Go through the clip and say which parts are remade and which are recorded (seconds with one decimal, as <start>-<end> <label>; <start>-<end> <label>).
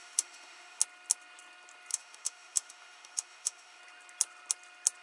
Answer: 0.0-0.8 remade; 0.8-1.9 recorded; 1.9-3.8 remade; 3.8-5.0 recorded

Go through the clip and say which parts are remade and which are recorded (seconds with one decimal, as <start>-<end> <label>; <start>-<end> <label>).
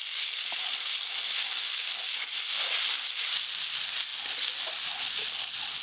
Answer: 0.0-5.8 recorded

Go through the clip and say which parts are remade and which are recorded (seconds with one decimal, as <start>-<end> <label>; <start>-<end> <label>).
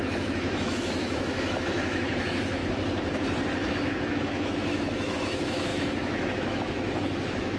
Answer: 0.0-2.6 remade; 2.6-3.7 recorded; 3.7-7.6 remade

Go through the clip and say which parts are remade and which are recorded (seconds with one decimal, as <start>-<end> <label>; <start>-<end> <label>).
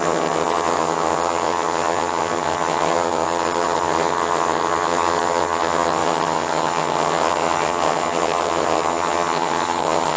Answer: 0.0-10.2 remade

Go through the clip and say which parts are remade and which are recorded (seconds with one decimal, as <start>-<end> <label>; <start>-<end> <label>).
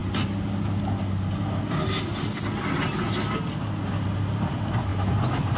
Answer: 0.0-5.6 recorded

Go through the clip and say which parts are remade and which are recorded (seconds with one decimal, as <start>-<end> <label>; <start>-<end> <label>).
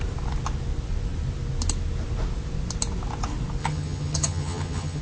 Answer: 0.0-3.6 recorded; 3.6-5.0 remade